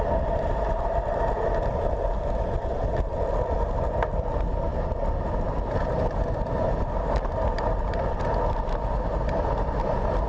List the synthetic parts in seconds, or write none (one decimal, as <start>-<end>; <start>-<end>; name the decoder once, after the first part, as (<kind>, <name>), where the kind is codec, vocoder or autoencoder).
none